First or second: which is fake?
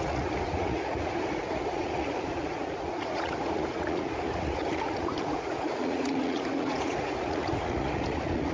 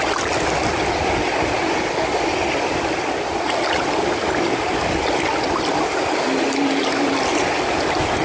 first